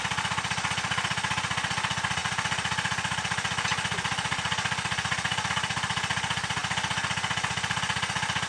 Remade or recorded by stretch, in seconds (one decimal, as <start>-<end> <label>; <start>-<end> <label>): 0.0-8.5 recorded